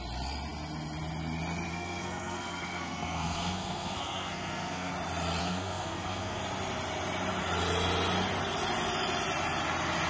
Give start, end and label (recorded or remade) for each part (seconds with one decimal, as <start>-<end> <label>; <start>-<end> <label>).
0.0-1.7 recorded; 1.7-4.9 remade; 4.9-5.4 recorded; 5.4-6.4 remade; 6.4-10.1 recorded